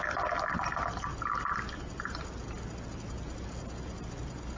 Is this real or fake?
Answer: real